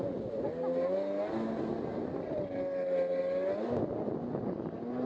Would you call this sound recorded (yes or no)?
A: yes